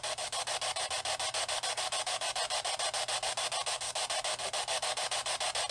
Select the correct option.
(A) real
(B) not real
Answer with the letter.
A